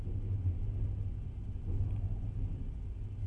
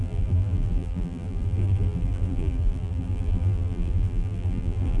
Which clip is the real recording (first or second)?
first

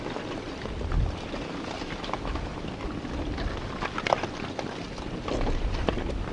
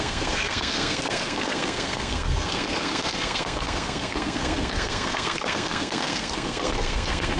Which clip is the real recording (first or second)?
first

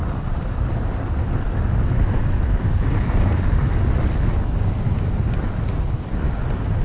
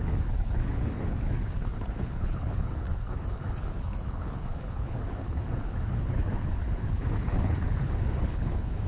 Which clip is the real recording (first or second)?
first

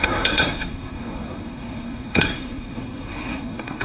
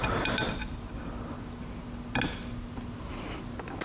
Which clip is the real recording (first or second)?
second